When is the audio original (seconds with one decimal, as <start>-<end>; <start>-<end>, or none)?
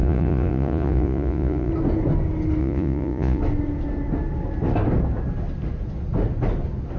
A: 1.7-2.6; 3.4-7.0